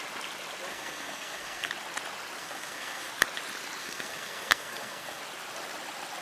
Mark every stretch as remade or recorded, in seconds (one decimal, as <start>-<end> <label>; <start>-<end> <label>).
0.0-0.7 recorded; 0.7-1.7 remade; 1.7-2.4 recorded; 2.4-3.1 remade; 3.1-3.8 recorded; 3.8-5.2 remade; 5.2-6.2 recorded